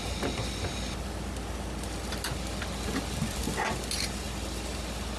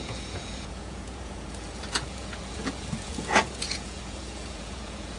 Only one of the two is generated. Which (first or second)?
second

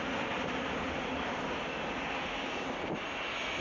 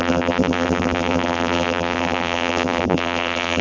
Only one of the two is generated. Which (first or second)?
second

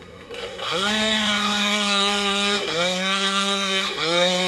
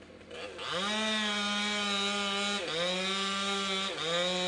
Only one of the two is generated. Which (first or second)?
first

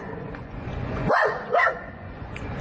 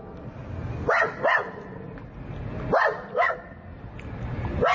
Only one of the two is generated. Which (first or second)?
first